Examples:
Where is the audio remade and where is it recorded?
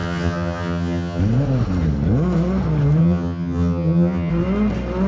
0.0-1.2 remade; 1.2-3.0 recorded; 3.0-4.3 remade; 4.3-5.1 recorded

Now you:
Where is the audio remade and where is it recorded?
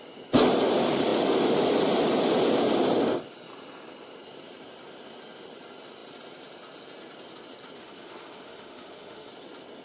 0.0-7.8 recorded; 7.8-9.3 remade; 9.3-9.8 recorded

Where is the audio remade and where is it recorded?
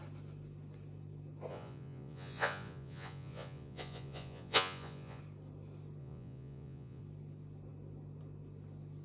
0.0-1.5 recorded; 1.5-5.2 remade; 5.2-6.0 recorded; 6.0-7.0 remade; 7.0-9.0 recorded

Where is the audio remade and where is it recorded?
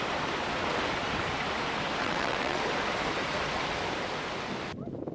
0.0-2.0 recorded; 2.0-2.6 remade; 2.6-5.1 recorded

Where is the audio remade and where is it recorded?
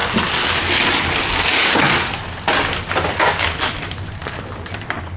0.0-5.2 recorded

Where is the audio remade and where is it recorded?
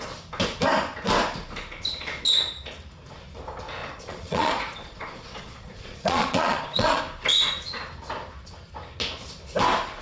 0.0-3.8 recorded; 3.8-7.0 remade; 7.0-10.0 recorded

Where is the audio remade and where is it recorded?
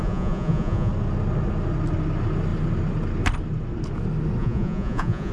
0.0-0.9 remade; 0.9-4.4 recorded; 4.4-5.3 remade